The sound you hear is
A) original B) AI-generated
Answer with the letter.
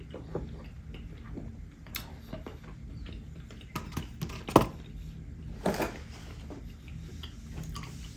A